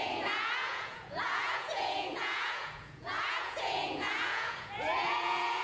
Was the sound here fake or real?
fake